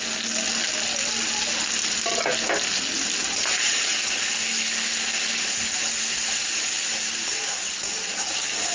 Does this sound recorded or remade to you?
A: recorded